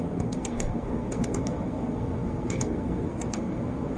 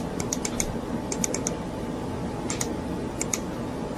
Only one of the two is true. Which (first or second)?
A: second